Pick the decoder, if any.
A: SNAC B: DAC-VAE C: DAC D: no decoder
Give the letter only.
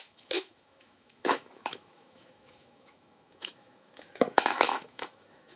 B